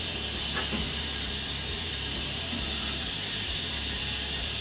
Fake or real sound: real